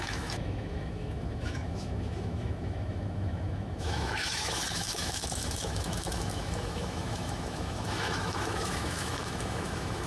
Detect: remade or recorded remade